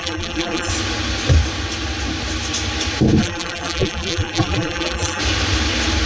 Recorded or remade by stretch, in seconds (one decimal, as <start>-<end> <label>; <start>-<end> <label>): 0.0-0.7 remade; 0.7-3.2 recorded; 3.2-5.2 remade; 5.2-6.1 recorded